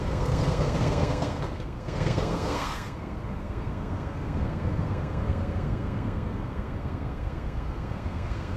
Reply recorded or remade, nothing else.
remade